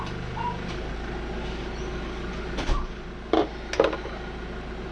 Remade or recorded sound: recorded